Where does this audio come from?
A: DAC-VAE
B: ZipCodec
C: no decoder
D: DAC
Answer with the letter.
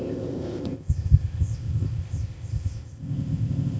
B